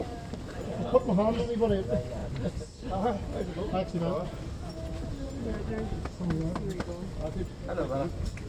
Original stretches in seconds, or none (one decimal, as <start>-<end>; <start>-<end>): 0.0-8.5